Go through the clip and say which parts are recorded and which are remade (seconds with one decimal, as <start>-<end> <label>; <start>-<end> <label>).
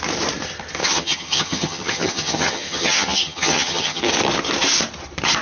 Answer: 0.0-0.8 recorded; 0.8-4.0 remade; 4.0-5.4 recorded